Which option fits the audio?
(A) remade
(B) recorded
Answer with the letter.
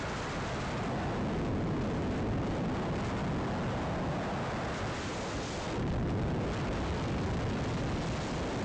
B